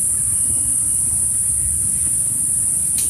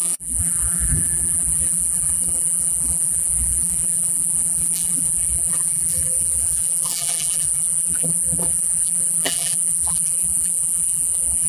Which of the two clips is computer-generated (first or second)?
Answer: second